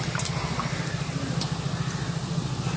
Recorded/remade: recorded